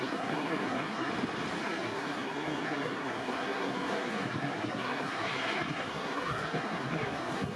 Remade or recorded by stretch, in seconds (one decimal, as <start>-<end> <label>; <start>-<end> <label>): 0.0-1.1 remade; 1.1-1.6 recorded; 1.6-7.6 remade